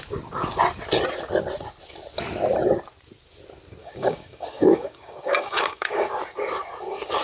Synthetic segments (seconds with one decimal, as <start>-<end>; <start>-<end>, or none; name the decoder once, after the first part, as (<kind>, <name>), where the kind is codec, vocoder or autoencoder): 3.8-6.1 (codec, DAC)